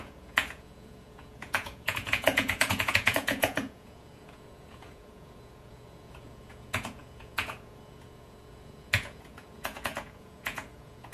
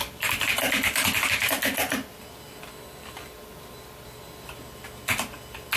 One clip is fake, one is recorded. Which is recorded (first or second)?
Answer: second